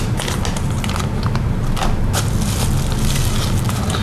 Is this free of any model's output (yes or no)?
yes